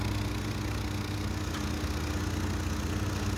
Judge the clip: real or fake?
real